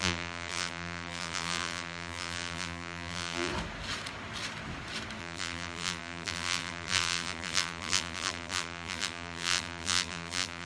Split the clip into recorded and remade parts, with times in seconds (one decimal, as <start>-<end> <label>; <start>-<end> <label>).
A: 0.0-3.5 remade; 3.5-5.2 recorded; 5.2-10.7 remade